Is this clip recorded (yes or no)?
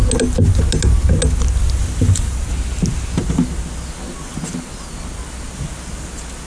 yes